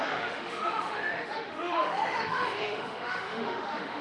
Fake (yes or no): yes